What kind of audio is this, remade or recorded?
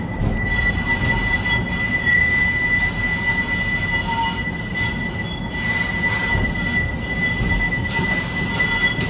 recorded